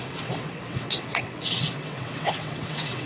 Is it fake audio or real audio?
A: fake